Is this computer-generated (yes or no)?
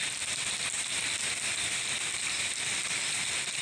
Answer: no